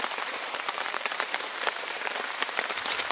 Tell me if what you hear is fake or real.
fake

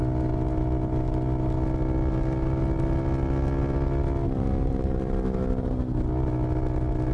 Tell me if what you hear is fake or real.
real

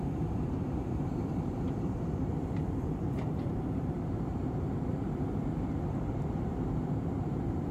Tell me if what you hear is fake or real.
fake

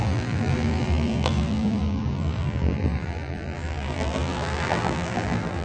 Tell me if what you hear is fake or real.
fake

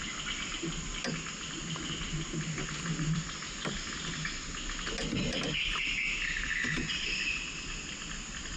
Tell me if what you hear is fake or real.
real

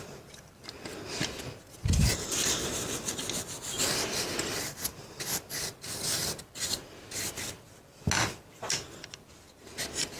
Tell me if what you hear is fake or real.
real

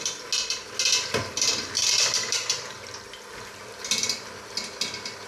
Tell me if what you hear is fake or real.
real